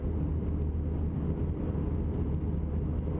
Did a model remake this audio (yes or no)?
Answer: no